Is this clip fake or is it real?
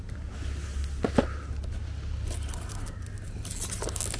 real